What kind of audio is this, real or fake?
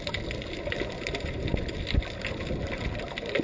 real